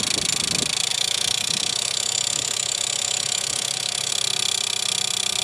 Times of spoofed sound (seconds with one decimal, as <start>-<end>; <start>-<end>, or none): 0.9-4.1